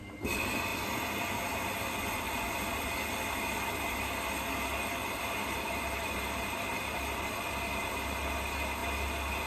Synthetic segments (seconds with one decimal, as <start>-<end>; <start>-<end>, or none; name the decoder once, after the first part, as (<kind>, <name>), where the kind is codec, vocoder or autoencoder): 0.7-1.7 (vocoder, BigVGAN v2); 5.0-7.4